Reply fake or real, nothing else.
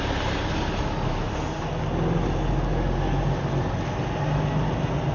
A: real